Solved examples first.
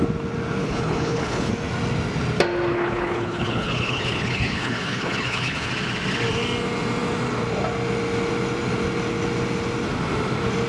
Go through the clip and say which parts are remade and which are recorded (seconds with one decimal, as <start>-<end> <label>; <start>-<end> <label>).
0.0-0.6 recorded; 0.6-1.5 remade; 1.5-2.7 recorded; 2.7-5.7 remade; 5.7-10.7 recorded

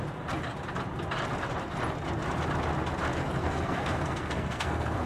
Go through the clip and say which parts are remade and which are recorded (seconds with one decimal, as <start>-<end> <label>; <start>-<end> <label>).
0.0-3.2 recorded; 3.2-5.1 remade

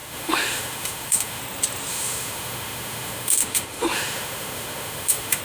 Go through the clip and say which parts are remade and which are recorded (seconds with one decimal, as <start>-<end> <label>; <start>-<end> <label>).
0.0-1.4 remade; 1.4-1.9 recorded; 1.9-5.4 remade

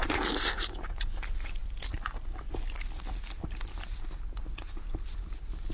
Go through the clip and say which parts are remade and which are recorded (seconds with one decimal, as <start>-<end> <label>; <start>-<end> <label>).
0.0-1.6 recorded; 1.6-4.7 remade; 4.7-5.7 recorded